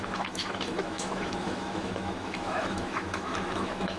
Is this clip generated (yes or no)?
yes